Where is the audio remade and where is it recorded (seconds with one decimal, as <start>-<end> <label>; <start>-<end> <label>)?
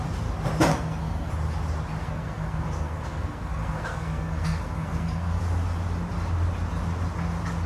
0.0-0.7 recorded; 0.7-1.3 remade; 1.3-2.0 recorded; 2.0-5.4 remade; 5.4-7.7 recorded